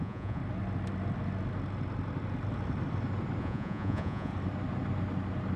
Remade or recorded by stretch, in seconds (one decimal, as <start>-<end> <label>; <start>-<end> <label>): 0.0-0.4 remade; 0.4-3.4 recorded; 3.4-4.3 remade; 4.3-5.6 recorded

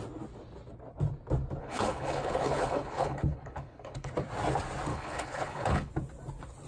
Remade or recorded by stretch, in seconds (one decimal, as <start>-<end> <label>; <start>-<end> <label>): 0.0-1.6 recorded; 1.6-4.1 remade; 4.1-4.9 recorded; 4.9-5.9 remade; 5.9-6.7 recorded